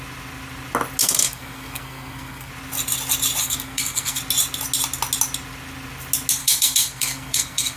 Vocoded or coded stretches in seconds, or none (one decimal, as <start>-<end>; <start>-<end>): 1.0-2.5; 3.4-4.2; 6.4-7.8